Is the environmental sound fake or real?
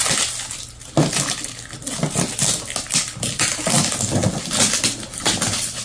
real